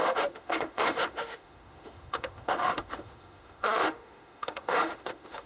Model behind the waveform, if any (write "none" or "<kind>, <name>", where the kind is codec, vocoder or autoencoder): autoencoder, DAC-VAE